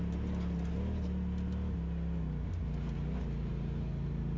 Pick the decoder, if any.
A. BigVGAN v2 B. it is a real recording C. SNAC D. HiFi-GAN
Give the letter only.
B